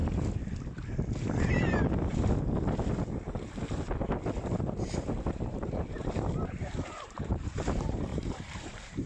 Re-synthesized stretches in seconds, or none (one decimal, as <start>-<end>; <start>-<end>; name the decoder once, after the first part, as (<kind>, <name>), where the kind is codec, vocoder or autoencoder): 4.6-9.1 (vocoder, BigVGAN v2)